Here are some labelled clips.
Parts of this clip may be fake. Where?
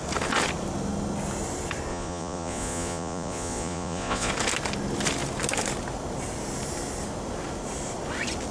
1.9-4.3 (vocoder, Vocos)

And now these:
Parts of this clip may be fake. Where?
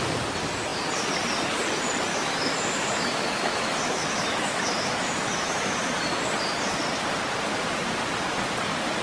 2.1-5.9 (autoencoder, DAC-VAE)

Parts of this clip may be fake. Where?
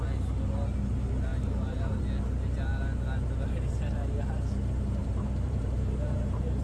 1.3-2.0 (vocoder, BigVGAN v2); 5.0-6.6